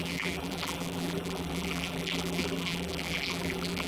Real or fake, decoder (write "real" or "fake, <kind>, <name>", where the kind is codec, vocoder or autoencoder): fake, vocoder, BigVGAN v2